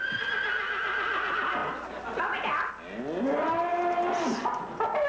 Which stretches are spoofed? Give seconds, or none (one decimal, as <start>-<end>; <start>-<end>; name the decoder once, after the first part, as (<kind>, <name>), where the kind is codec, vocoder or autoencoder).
none